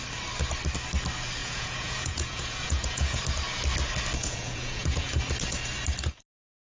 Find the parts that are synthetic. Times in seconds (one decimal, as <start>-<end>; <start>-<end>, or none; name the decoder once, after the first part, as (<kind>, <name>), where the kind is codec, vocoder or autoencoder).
1.4-3.2 (vocoder, Vocos); 4.2-5.1